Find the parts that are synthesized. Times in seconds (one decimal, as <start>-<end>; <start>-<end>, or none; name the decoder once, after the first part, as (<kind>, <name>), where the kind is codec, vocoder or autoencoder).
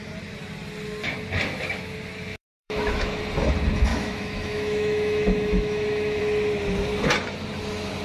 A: 2.3-3.2 (autoencoder, DAC-VAE); 3.9-6.2